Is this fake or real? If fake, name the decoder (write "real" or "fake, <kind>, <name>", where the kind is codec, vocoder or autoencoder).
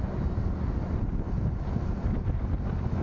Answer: real